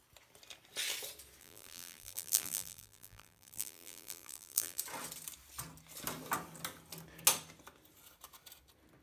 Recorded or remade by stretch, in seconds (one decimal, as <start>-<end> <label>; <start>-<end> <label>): 0.0-1.4 recorded; 1.4-4.8 remade; 4.8-9.0 recorded